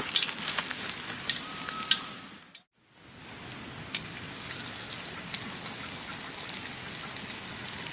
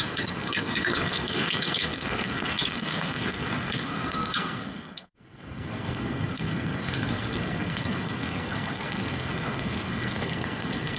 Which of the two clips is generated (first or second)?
second